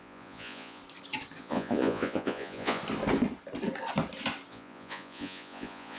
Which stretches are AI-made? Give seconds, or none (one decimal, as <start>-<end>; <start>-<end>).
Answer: 0.0-0.8; 1.4-2.8; 4.5-6.0